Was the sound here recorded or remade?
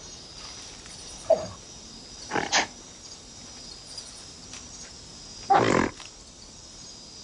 recorded